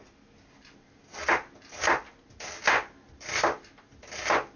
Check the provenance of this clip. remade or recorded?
recorded